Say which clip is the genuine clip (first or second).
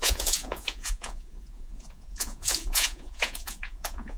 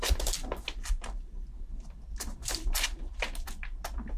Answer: second